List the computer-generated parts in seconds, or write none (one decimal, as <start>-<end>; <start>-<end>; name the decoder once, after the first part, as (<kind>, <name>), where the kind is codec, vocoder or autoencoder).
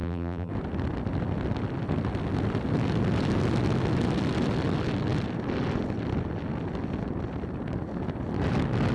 0.0-0.5 (vocoder, BigVGAN v2)